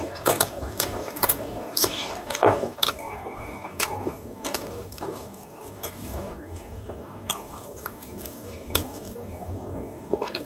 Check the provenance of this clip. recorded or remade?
remade